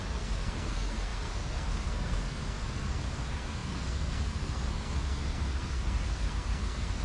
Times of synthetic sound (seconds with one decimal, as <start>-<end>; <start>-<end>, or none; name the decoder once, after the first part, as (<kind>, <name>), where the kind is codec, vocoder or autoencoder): 0.0-7.0 (codec, SNAC)